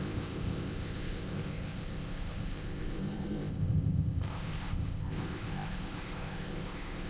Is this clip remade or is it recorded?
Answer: remade